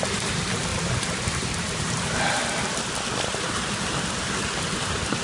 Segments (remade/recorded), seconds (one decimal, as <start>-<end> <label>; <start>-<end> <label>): 0.0-0.7 recorded; 0.7-2.2 remade; 2.2-5.2 recorded